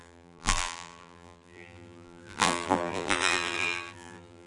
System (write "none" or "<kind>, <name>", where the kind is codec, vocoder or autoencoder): vocoder, BigVGAN v2